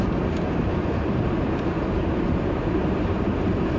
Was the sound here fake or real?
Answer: fake